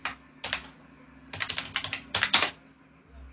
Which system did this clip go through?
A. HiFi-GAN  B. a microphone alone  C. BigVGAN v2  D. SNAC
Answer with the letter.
B